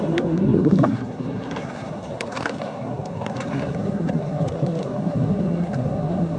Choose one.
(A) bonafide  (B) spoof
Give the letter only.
B